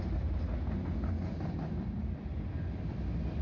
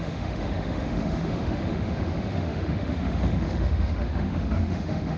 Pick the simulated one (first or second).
second